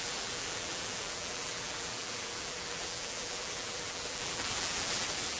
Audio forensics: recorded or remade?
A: remade